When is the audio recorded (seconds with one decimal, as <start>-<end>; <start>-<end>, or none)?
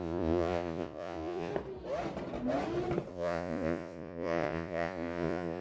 1.5-3.1